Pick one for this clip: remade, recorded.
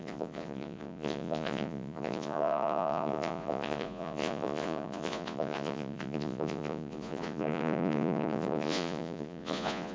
remade